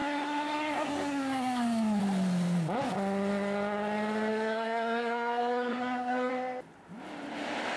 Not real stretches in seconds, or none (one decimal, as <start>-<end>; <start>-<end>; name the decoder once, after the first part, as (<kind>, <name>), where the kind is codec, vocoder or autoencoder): 0.0-2.0 (codec, SNAC); 4.3-6.3